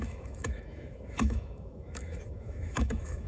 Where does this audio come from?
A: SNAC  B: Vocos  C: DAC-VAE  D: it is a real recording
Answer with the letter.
C